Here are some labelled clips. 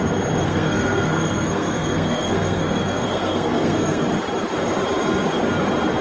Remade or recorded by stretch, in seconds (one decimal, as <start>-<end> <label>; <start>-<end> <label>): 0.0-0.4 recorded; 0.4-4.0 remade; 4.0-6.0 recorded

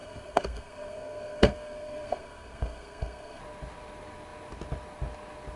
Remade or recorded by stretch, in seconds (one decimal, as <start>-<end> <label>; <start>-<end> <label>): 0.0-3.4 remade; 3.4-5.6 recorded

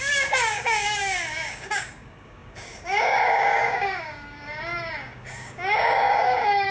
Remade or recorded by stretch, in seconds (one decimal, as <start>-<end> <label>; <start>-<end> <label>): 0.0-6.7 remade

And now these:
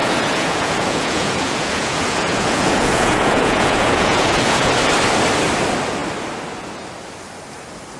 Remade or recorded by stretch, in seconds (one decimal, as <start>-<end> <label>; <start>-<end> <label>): 0.0-4.7 remade; 4.7-8.0 recorded

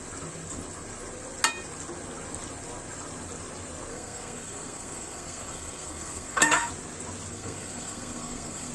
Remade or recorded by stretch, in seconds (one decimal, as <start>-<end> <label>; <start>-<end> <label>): 0.0-3.9 recorded; 3.9-6.7 remade; 6.7-7.3 recorded; 7.3-8.7 remade